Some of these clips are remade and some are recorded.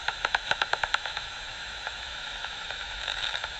remade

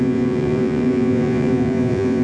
remade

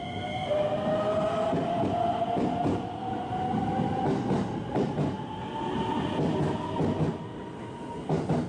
recorded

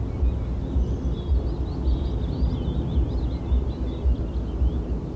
recorded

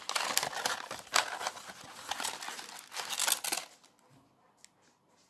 recorded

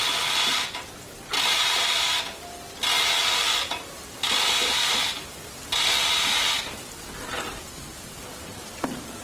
recorded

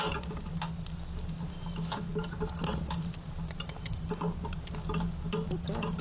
recorded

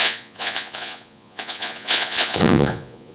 remade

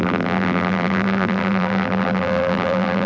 remade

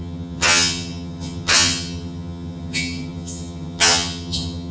remade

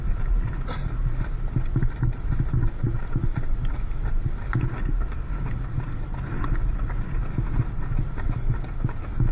recorded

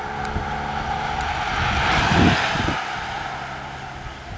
recorded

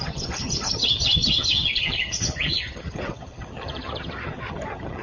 remade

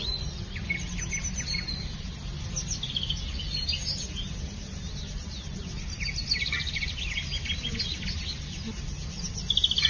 recorded